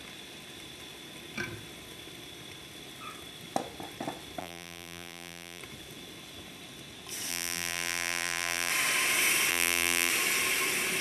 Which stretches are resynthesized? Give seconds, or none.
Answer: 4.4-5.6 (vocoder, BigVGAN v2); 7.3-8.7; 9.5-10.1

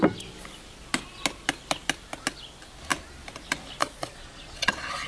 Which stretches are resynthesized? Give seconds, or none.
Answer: 3.8-5.1 (vocoder, Vocos)